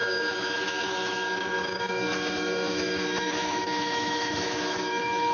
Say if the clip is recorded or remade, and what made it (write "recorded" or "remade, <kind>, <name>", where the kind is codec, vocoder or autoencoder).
remade, autoencoder, DAC-VAE